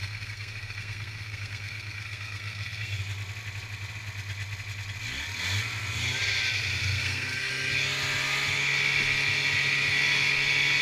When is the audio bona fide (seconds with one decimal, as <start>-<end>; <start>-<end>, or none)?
3.0-6.8; 7.5-10.8